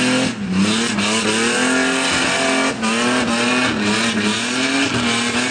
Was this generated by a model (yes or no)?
no